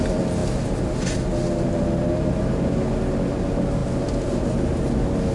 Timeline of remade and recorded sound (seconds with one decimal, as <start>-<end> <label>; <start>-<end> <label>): 0.0-5.3 recorded